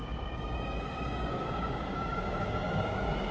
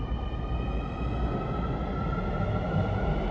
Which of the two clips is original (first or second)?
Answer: second